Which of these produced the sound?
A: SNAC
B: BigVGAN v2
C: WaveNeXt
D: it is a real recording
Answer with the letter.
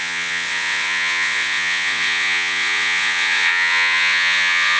C